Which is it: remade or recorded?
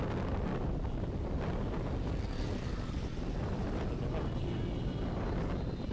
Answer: recorded